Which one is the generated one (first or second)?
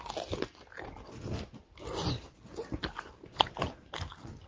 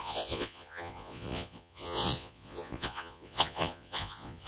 second